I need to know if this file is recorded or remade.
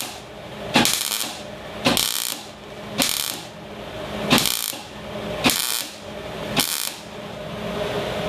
recorded